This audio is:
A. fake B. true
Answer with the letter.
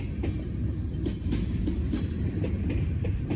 B